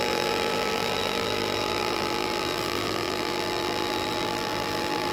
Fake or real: fake